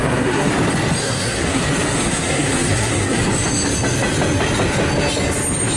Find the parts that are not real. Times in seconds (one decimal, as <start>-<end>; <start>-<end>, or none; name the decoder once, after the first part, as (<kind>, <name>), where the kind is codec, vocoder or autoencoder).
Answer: 0.0-0.5 (codec, SNAC); 1.0-1.6; 2.0-3.2

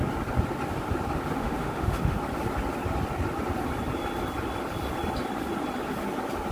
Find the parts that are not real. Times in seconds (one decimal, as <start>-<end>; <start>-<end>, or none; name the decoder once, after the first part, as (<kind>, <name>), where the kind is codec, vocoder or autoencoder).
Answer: 1.4-2.2 (autoencoder, DAC-VAE)

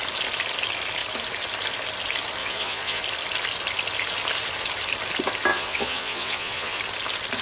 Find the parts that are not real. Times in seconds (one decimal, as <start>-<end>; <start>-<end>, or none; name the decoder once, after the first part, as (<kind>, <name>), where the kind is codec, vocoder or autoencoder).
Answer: 2.4-3.0 (vocoder, Vocos); 5.5-6.8

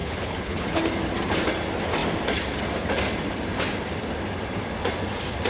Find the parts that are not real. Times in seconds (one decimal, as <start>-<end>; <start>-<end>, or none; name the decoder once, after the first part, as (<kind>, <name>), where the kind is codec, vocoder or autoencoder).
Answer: 0.0-0.8 (codec, HILCodec)